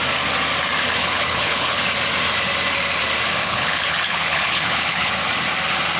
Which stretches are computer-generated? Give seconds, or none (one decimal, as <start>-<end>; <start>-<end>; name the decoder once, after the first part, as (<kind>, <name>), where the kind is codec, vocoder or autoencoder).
1.0-1.8 (codec, HILCodec); 3.4-5.1